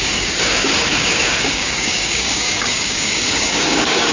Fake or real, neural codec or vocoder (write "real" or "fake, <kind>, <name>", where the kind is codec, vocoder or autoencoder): fake, codec, DAC